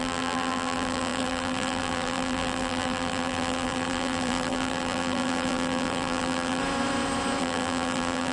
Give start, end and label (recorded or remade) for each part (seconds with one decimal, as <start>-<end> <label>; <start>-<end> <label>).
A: 0.0-6.6 remade; 6.6-7.4 recorded; 7.4-8.3 remade